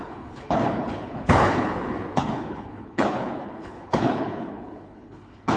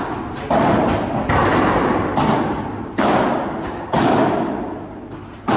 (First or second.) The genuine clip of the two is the second